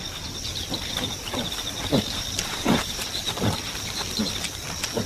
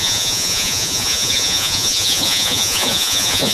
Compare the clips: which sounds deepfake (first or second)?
second